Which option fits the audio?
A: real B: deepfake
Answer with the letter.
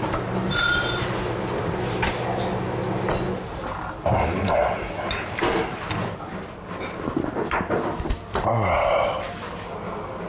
A